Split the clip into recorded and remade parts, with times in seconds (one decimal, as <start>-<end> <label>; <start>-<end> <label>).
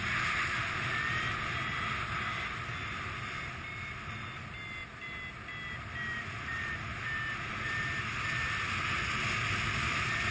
0.0-10.3 recorded